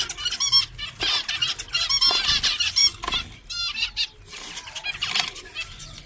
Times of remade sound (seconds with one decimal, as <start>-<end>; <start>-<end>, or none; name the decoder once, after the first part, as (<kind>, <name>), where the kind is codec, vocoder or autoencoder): none